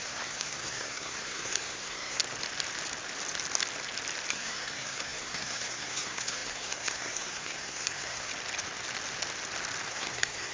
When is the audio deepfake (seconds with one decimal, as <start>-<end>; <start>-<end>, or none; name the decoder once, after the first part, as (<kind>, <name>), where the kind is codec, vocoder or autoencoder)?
0.0-2.2 (codec, SNAC); 4.3-8.3; 9.9-10.5